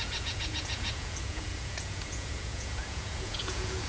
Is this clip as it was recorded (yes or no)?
no